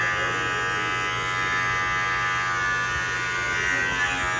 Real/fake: real